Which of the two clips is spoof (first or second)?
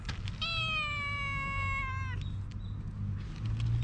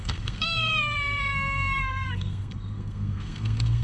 second